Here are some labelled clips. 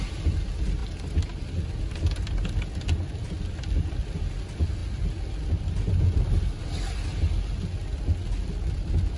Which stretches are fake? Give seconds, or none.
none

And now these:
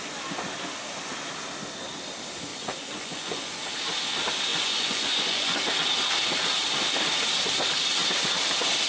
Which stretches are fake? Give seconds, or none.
2.5-3.6 (vocoder, Vocos); 4.5-5.6

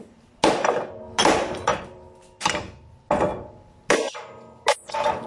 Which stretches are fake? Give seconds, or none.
none

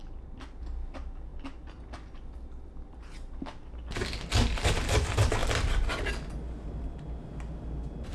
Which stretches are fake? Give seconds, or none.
none